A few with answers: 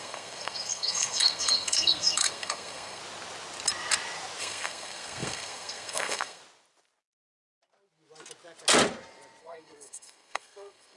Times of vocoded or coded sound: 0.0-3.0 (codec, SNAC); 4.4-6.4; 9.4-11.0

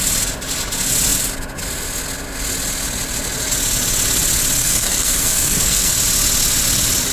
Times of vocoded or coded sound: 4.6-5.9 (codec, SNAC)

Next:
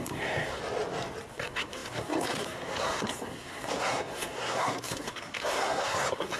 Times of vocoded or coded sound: 0.0-0.6 (codec, SNAC); 1.3-6.4